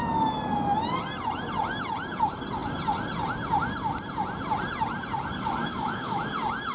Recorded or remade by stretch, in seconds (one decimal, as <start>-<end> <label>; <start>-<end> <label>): 0.0-5.6 recorded; 5.6-6.2 remade; 6.2-6.7 recorded